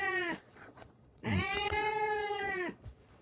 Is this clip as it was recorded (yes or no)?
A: no